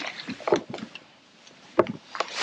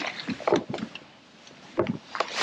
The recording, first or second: second